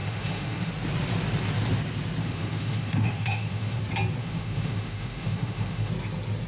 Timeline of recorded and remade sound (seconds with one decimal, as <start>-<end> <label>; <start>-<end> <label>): 0.0-0.7 remade; 0.7-2.2 recorded; 2.2-3.8 remade; 3.8-4.2 recorded; 4.2-5.9 remade; 5.9-6.5 recorded